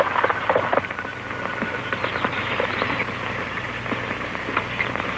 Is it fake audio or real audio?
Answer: real